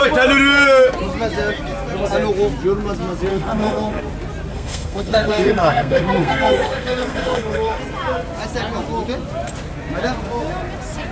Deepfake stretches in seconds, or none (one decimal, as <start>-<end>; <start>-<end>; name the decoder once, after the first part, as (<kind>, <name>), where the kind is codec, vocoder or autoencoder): 3.3-4.0 (codec, SNAC); 4.5-7.8